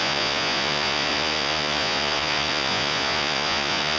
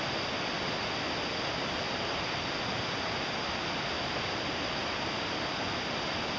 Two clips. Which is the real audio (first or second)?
second